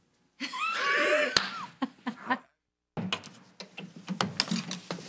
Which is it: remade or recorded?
recorded